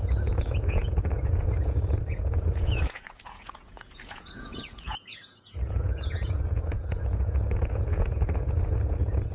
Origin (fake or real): fake